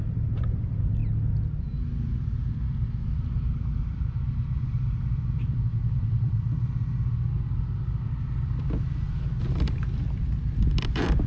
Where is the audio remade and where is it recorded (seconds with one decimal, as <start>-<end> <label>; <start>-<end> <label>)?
0.0-1.0 remade; 1.0-2.1 recorded; 2.1-7.1 remade; 7.1-11.3 recorded